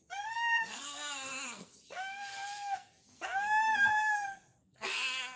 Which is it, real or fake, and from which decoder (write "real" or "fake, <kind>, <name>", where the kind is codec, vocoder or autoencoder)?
fake, codec, SNAC